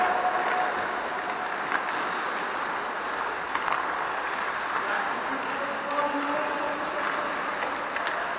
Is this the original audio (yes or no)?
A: yes